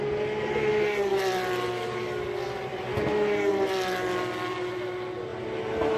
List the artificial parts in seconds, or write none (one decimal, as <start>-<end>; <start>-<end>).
none